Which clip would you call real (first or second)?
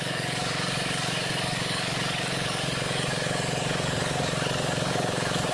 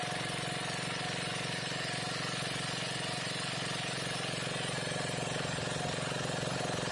second